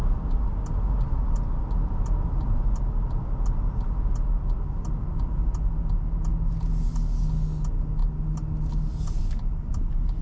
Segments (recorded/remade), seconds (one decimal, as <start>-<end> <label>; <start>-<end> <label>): 0.0-10.2 recorded